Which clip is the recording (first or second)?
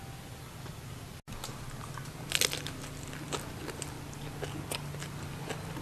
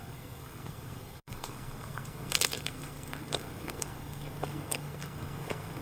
first